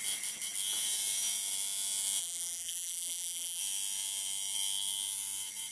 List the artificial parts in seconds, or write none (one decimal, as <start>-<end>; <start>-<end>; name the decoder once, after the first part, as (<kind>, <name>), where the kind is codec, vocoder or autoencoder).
2.2-3.6 (vocoder, BigVGAN v2)